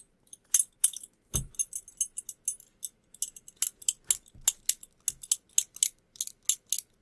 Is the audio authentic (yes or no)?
yes